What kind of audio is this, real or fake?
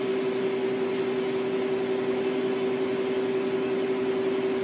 real